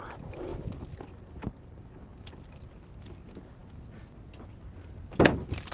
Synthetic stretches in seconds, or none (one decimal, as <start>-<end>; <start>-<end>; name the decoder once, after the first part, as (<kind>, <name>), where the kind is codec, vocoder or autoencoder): none